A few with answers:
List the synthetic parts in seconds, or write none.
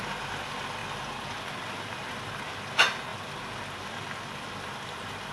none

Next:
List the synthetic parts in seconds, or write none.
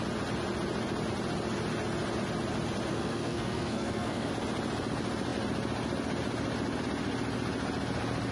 2.9-4.3 (codec, SNAC)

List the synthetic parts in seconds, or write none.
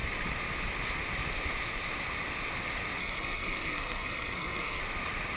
3.0-4.8 (codec, SNAC)